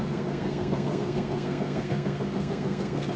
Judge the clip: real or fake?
fake